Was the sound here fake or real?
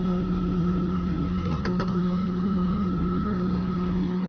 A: fake